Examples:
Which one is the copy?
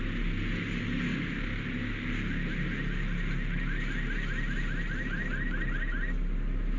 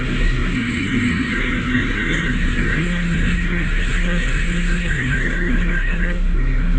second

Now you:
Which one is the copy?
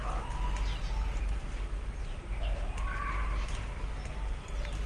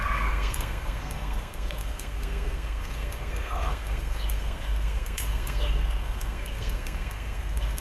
second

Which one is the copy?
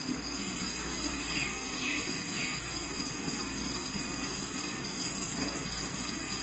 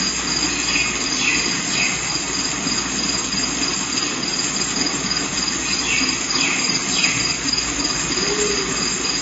first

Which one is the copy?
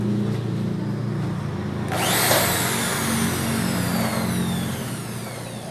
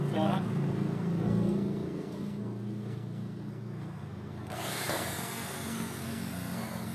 second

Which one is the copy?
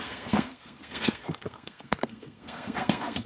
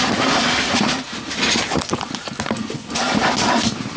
first